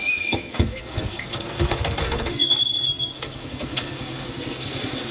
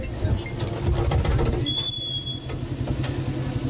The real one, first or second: second